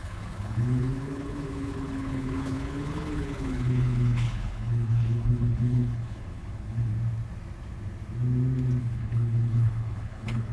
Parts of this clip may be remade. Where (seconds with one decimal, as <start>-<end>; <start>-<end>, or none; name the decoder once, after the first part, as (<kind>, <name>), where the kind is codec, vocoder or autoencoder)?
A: 0.0-6.9 (codec, HILCodec); 8.8-10.5